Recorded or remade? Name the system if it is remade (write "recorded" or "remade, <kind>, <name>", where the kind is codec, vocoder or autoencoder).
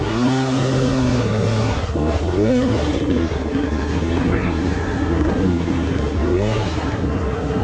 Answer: remade, codec, SNAC